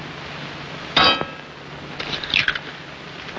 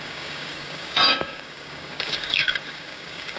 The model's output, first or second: second